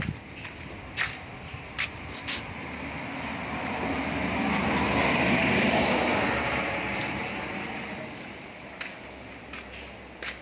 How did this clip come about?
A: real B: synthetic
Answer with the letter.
A